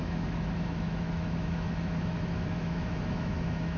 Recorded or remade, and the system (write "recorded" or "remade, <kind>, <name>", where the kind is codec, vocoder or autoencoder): remade, autoencoder, DAC-VAE